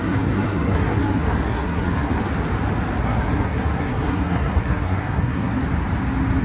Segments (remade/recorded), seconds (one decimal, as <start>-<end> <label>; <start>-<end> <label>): 0.0-2.3 remade; 2.3-3.0 recorded; 3.0-5.6 remade; 5.6-6.4 recorded